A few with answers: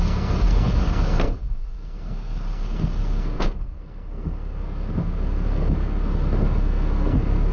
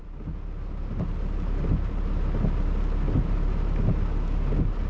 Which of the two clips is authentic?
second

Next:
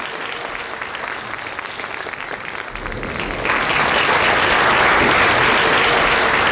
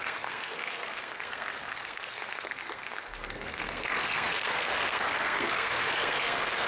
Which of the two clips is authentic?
first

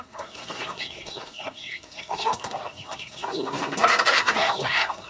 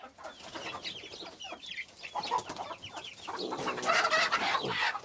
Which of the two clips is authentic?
second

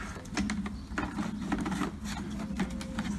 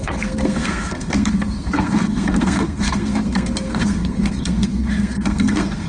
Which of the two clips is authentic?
first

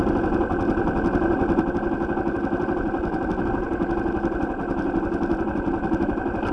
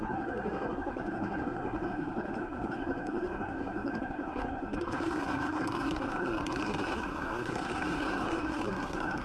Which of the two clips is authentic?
first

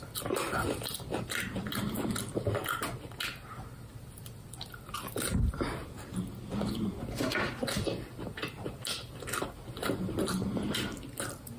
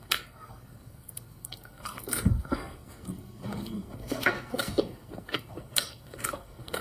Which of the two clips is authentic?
first